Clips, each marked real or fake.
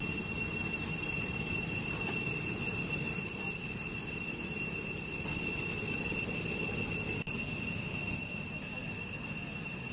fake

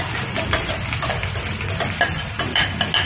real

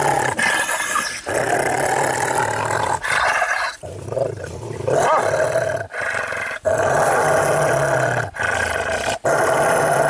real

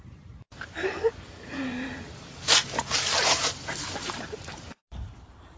fake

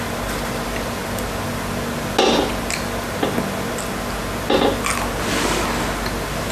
real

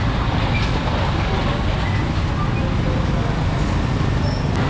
real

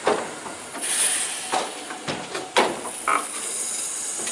real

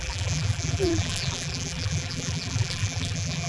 fake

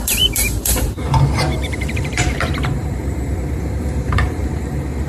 fake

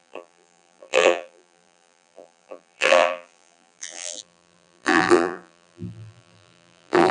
fake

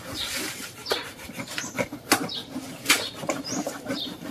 fake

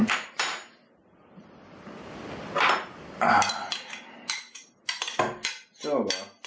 real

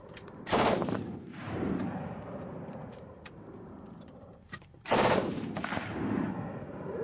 fake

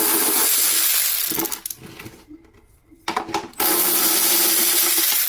real